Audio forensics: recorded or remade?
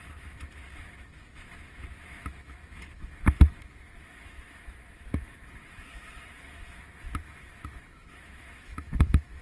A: remade